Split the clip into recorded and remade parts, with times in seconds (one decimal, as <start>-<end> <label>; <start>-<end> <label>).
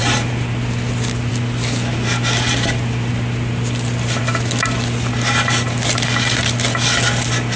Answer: 0.0-7.6 recorded